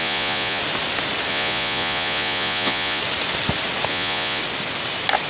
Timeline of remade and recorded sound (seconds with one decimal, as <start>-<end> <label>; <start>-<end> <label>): 0.0-0.6 remade; 0.6-1.3 recorded; 1.3-3.0 remade; 3.0-3.9 recorded; 3.9-4.4 remade; 4.4-5.3 recorded